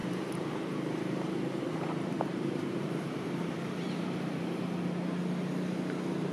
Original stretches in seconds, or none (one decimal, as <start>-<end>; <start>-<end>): 1.6-2.3; 4.6-6.3